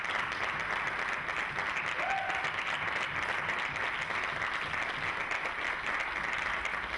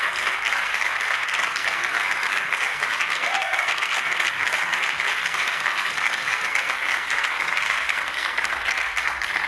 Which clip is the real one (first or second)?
first